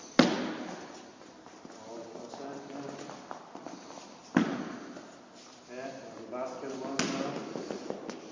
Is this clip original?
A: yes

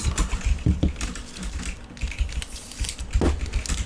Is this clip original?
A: yes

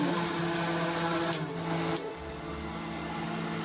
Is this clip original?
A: yes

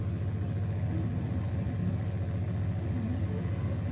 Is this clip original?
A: yes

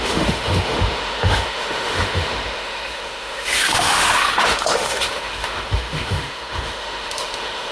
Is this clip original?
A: no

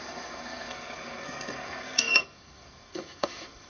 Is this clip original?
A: no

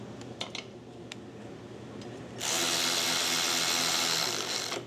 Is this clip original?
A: yes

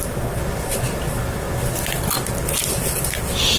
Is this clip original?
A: yes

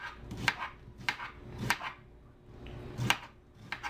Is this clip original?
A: yes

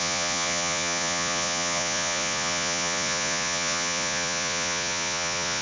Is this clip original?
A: no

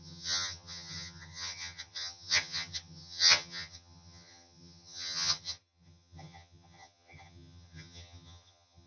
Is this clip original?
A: no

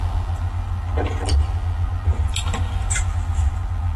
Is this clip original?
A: yes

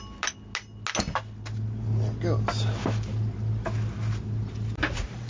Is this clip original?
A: yes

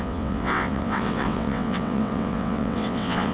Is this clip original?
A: no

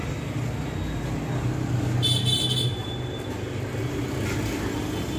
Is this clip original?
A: yes